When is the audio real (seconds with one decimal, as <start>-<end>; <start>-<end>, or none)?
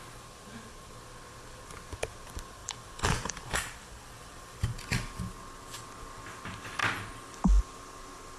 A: 0.0-2.6; 5.2-8.4